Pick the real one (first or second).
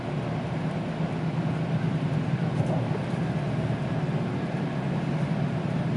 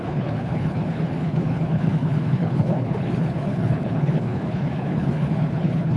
first